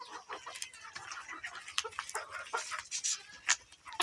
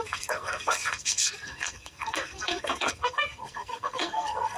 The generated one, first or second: second